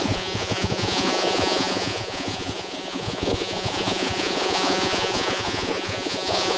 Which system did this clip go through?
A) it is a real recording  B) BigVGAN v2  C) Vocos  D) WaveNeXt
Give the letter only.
C